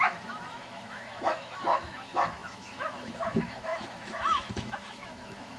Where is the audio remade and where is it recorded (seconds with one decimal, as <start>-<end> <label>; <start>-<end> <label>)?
0.0-5.6 remade